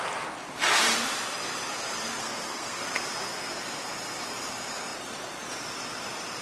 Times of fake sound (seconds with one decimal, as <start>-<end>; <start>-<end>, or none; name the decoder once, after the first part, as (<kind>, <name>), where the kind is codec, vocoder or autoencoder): 2.2-2.8 (codec, SNAC)